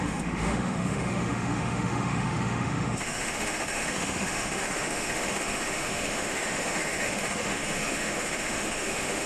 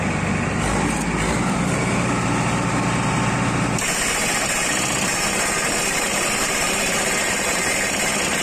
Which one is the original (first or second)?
second